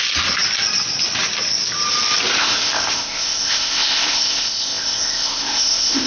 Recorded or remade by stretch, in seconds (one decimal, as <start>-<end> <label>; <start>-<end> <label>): 0.0-2.4 recorded; 2.4-6.1 remade